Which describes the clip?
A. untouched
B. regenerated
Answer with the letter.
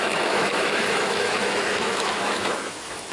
B